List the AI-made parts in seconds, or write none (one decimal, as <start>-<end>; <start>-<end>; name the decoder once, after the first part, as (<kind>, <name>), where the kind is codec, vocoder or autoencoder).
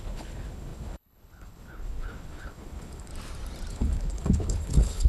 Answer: 0.0-3.1 (codec, HILCodec); 3.7-5.1